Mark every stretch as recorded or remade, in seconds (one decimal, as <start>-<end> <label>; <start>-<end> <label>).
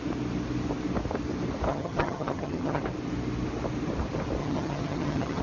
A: 0.0-1.7 recorded; 1.7-2.8 remade; 2.8-4.4 recorded; 4.4-5.4 remade